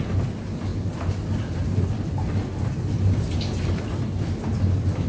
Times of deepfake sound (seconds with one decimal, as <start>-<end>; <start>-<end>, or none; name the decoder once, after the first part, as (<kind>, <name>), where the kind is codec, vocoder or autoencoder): none